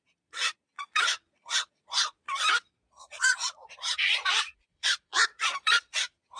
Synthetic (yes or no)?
yes